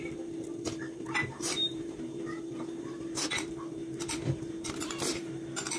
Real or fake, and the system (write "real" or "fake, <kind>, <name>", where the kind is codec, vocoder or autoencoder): fake, vocoder, BigVGAN v2